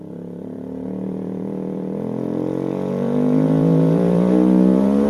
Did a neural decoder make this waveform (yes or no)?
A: yes